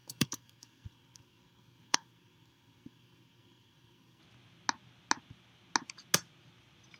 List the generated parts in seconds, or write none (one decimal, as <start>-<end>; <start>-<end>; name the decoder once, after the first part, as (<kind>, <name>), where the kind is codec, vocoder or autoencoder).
0.0-4.2 (codec, SNAC)

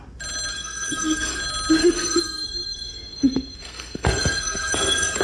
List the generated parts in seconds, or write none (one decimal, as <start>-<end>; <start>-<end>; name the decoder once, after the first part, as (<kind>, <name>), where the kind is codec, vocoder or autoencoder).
0.5-1.4 (codec, SNAC); 1.8-5.2